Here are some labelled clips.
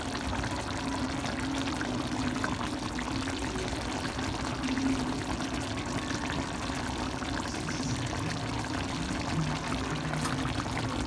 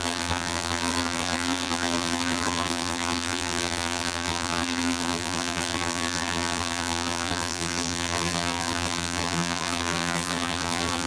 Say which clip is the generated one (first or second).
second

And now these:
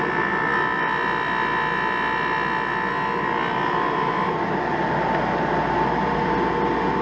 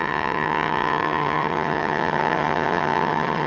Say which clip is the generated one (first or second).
second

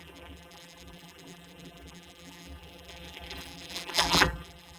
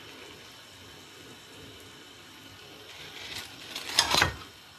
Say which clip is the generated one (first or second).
first